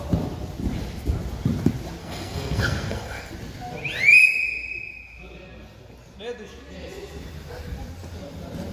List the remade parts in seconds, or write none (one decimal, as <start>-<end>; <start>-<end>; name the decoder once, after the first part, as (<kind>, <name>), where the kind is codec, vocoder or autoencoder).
2.0-3.3 (codec, SNAC)